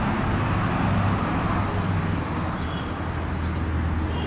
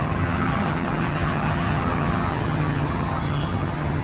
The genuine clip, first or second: first